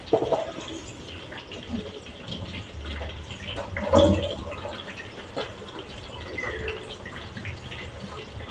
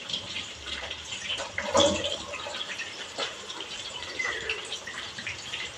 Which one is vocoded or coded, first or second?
second